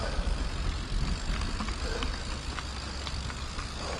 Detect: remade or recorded recorded